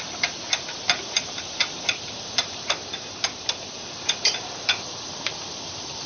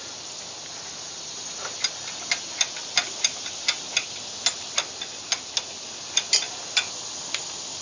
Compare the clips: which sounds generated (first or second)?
first